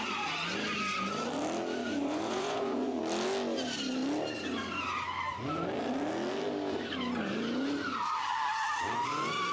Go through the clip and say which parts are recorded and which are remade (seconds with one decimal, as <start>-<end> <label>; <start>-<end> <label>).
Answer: 0.0-1.8 recorded; 1.8-3.0 remade; 3.0-9.5 recorded